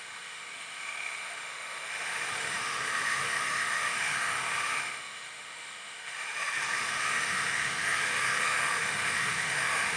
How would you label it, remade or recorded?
remade